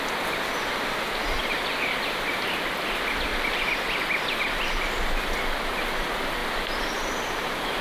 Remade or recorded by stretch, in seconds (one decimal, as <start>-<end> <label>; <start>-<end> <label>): 0.0-7.8 recorded